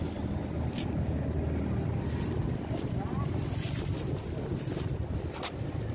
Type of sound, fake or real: real